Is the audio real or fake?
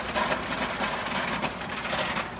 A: real